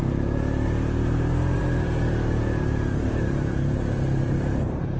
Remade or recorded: remade